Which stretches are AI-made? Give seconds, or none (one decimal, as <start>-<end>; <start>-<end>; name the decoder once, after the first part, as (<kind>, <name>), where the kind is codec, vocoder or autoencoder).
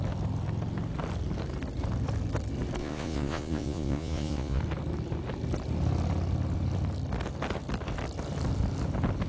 2.8-4.6 (vocoder, Vocos)